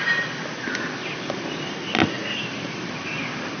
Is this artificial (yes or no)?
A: yes